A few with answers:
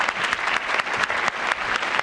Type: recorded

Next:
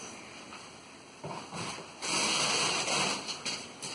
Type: recorded